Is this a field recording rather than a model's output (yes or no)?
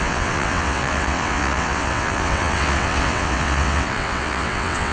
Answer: no